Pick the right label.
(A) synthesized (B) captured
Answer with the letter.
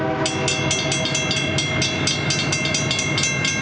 B